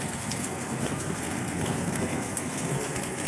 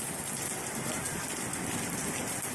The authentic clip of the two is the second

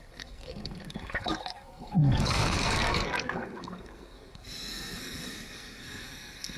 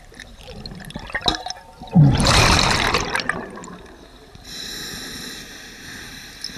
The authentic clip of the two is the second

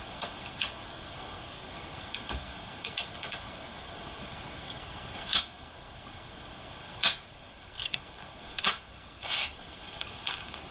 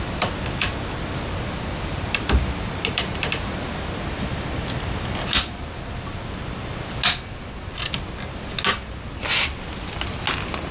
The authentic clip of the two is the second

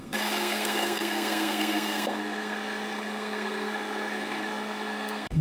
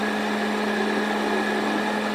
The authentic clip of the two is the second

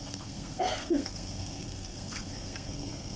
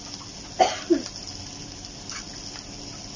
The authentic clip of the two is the second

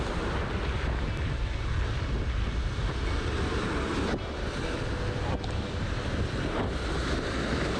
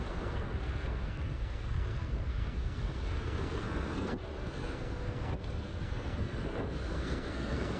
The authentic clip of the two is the first